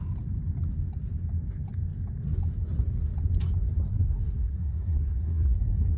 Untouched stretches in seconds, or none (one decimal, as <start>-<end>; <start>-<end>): 0.0-3.8